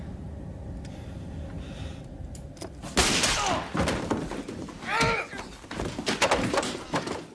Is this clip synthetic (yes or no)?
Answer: no